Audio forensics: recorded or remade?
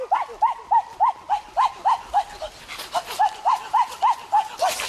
recorded